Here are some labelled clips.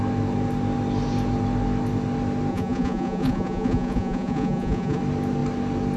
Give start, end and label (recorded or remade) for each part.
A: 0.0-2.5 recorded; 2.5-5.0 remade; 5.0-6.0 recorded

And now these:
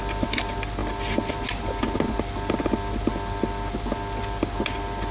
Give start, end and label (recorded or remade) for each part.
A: 0.0-5.1 recorded

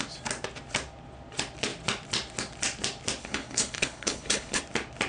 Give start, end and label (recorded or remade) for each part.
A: 0.0-3.2 recorded; 3.2-4.6 remade; 4.6-5.1 recorded

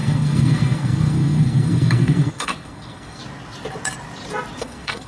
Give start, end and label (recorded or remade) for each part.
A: 0.0-3.2 remade; 3.2-4.6 recorded; 4.6-5.1 remade

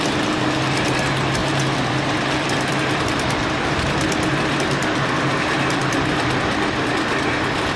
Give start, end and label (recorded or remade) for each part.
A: 0.0-1.4 recorded; 1.4-3.4 remade; 3.4-7.8 recorded

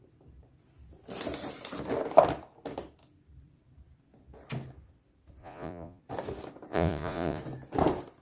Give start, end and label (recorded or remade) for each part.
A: 0.0-5.4 recorded; 5.4-6.0 remade; 6.0-6.7 recorded; 6.7-7.4 remade; 7.4-8.2 recorded

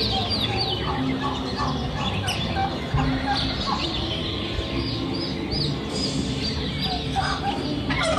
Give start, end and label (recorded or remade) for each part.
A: 0.0-8.2 recorded